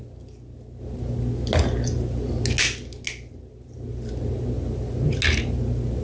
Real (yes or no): yes